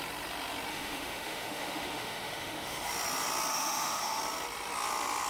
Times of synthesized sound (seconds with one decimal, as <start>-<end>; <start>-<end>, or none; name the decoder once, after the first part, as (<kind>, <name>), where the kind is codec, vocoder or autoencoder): 0.7-2.9 (autoencoder, DAC-VAE); 3.5-4.2